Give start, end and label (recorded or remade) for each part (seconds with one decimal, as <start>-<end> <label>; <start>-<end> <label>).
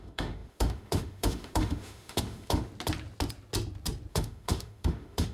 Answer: 0.0-2.7 remade; 2.7-4.1 recorded; 4.1-5.3 remade